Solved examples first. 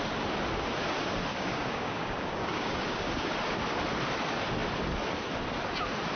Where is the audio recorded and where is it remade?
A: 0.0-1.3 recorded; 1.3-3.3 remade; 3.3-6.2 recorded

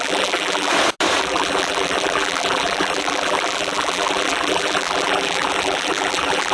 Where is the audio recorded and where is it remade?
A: 0.0-0.7 remade; 0.7-1.2 recorded; 1.2-6.5 remade

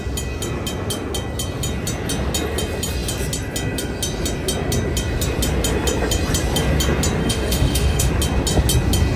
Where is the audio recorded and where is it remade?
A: 0.0-7.2 recorded; 7.2-8.1 remade; 8.1-9.2 recorded